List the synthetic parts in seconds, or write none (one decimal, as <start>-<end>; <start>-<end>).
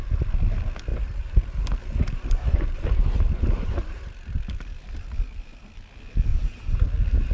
0.9-4.1; 6.3-6.8